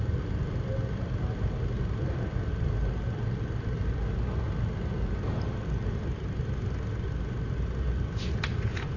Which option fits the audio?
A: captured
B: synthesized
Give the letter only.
A